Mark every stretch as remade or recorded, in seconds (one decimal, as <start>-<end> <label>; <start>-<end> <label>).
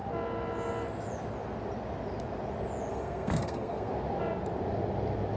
0.0-2.9 recorded; 2.9-3.9 remade; 3.9-5.4 recorded